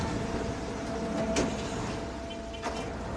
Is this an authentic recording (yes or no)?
yes